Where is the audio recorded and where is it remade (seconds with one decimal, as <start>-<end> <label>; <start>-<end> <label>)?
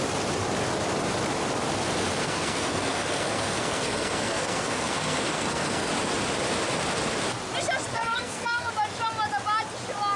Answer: 0.0-2.2 recorded; 2.2-5.9 remade; 5.9-7.9 recorded; 7.9-8.7 remade; 8.7-10.2 recorded